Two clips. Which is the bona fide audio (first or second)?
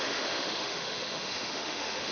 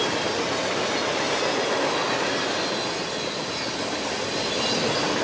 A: second